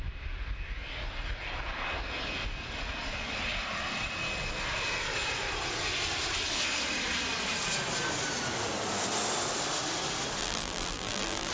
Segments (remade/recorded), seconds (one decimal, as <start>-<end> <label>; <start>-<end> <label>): 0.0-10.4 recorded; 10.4-11.5 remade